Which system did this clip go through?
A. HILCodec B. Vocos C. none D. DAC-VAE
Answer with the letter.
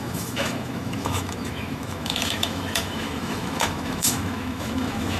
D